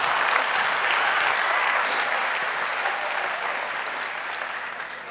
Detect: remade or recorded recorded